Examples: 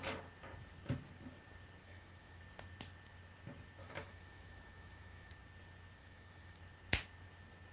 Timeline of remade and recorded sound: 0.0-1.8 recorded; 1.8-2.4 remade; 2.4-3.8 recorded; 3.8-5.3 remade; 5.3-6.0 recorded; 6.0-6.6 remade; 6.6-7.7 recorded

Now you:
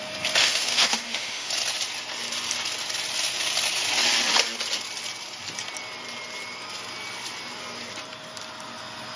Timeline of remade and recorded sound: 0.0-0.4 recorded; 0.4-1.5 remade; 1.5-9.2 recorded